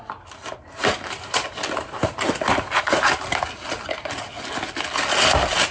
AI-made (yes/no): no